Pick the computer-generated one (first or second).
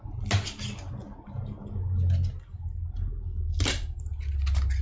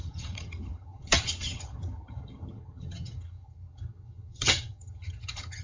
second